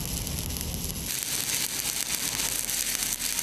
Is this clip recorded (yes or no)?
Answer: yes